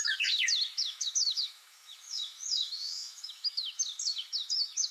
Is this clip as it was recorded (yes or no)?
no